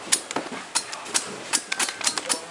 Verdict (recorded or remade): recorded